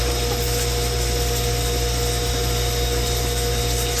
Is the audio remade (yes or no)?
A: no